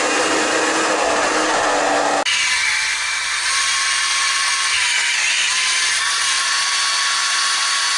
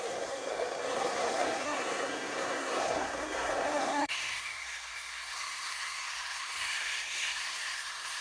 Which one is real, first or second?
first